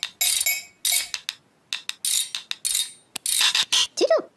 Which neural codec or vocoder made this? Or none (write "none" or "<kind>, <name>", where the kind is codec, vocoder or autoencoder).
none